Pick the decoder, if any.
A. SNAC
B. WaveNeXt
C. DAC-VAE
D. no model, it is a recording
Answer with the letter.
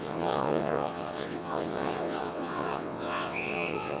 B